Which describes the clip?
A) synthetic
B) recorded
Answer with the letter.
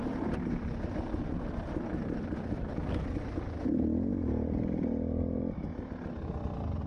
B